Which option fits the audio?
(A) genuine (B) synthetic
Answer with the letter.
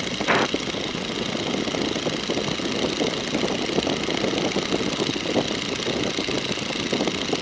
A